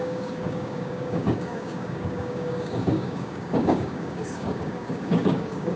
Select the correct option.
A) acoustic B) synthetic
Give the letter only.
B